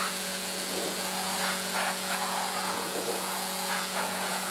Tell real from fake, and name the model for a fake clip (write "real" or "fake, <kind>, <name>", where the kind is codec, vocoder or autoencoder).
fake, vocoder, Vocos